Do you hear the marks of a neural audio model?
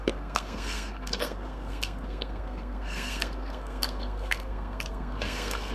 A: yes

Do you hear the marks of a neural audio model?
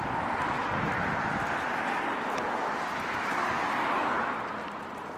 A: no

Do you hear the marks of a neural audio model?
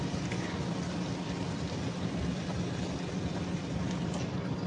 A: no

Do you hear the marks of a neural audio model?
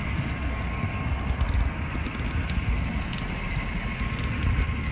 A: no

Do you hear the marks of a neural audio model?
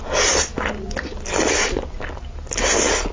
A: no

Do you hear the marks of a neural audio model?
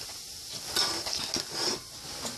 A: no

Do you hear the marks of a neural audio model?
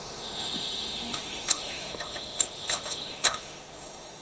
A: yes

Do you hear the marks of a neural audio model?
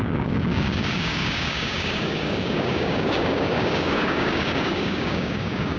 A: yes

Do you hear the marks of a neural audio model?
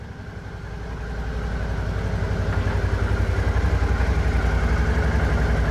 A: no